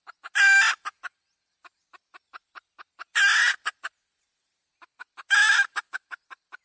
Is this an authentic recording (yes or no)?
yes